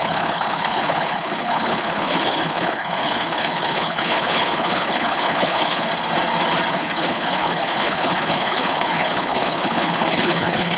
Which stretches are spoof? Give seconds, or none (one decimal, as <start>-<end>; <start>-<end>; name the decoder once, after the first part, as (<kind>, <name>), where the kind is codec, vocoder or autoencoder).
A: 0.0-5.9 (codec, HILCodec); 6.7-10.8